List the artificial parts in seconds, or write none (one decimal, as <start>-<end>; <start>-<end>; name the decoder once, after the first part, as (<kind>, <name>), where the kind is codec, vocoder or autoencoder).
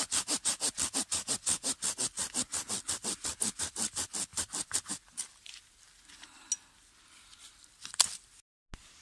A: none